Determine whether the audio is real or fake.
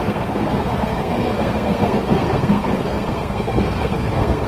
fake